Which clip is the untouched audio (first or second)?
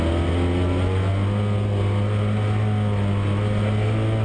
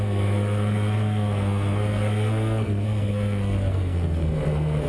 first